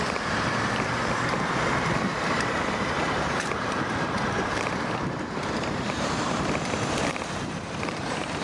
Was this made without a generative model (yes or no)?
no